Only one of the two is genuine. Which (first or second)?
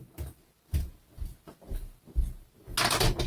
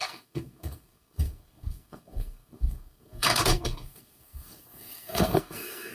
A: first